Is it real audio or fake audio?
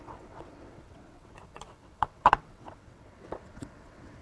fake